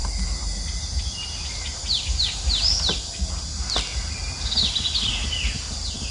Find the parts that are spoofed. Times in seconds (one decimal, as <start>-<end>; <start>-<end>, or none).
none